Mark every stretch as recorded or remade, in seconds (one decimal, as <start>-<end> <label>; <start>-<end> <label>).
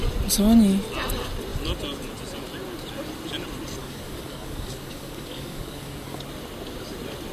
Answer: 0.0-3.8 recorded; 3.8-6.2 remade; 6.2-7.3 recorded